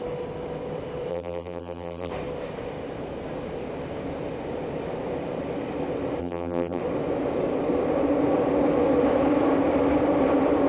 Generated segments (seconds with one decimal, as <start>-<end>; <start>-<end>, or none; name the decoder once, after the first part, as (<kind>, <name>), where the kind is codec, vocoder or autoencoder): 1.1-2.1 (vocoder, BigVGAN v2); 6.2-6.8